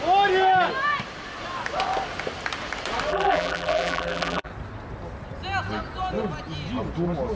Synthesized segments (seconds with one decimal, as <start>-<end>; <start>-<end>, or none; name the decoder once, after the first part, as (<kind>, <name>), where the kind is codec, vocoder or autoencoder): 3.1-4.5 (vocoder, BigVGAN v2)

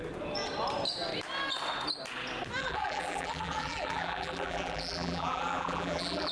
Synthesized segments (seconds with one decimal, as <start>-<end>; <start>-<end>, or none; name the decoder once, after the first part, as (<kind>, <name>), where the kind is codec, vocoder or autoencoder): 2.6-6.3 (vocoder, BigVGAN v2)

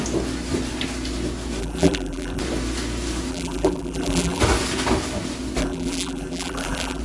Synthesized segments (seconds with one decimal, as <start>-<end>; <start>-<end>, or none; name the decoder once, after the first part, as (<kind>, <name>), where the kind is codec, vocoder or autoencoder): 1.6-2.4 (vocoder, BigVGAN v2); 3.3-4.4; 5.6-7.0